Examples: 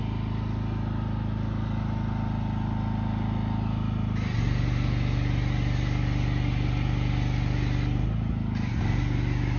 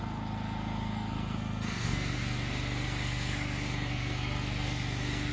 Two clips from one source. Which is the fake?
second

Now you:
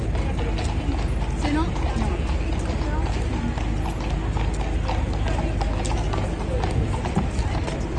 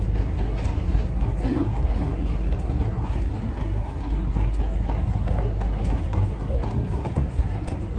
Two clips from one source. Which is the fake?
second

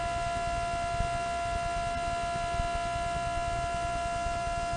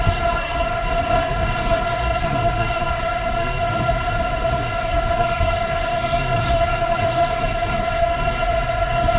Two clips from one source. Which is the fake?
second